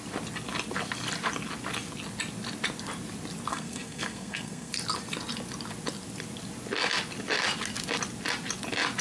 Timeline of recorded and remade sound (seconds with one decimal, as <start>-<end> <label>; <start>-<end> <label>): 0.0-3.5 recorded; 3.5-4.7 remade; 4.7-9.0 recorded